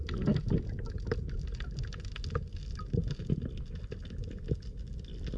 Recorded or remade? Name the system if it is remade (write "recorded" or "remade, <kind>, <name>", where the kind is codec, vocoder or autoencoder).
recorded